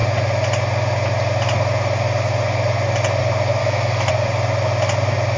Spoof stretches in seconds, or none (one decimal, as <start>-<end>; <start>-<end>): 3.6-4.1